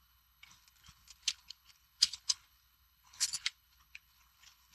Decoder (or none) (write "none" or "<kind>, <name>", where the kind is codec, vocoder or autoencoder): codec, HILCodec